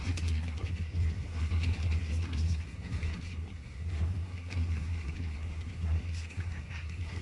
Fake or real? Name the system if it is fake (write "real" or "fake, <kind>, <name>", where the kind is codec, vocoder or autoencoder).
fake, codec, SNAC